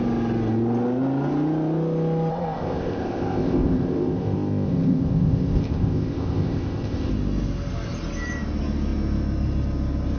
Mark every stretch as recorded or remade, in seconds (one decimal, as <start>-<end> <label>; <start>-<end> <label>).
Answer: 0.0-2.3 recorded; 2.3-7.1 remade; 7.1-10.2 recorded